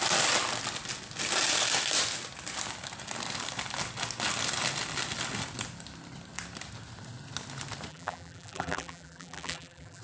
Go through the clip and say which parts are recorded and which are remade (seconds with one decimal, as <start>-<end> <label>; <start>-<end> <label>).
0.0-7.9 recorded; 7.9-10.0 remade